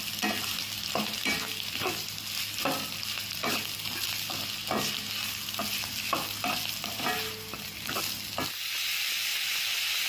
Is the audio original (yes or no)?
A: yes